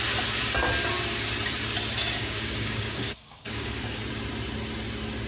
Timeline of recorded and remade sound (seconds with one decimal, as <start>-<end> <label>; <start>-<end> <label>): 0.0-2.2 recorded; 2.2-4.0 remade; 4.0-5.3 recorded